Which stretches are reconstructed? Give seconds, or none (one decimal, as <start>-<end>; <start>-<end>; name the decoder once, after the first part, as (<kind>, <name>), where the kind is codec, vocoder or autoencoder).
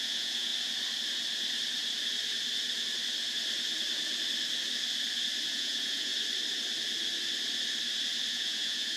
0.0-0.5 (vocoder, Vocos); 5.5-6.1; 8.3-9.0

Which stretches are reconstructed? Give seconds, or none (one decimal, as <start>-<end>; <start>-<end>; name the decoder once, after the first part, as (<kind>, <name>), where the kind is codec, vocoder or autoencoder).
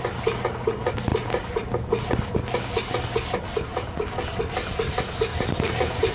none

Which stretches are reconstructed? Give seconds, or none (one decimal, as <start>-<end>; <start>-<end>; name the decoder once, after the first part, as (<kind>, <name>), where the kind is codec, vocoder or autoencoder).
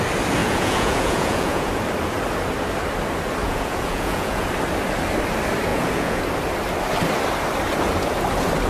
0.4-1.7 (vocoder, Vocos); 3.4-4.5; 5.7-6.2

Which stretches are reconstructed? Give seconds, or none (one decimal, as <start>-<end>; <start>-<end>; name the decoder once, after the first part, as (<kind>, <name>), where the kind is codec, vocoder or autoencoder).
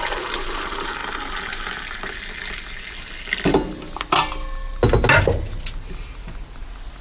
none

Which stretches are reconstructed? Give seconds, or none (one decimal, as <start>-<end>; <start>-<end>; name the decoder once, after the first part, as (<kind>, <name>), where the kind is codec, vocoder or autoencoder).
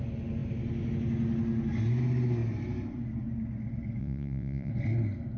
4.0-4.7 (vocoder, Vocos)